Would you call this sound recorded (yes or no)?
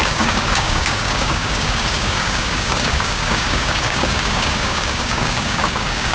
no